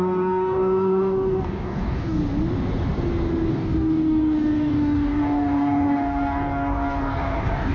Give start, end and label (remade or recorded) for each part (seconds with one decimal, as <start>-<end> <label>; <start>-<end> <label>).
0.0-2.2 remade; 2.2-3.5 recorded; 3.5-7.7 remade